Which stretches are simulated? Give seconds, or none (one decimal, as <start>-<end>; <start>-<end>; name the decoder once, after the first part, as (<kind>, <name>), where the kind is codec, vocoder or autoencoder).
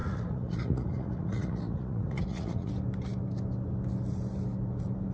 0.0-2.7 (vocoder, Vocos)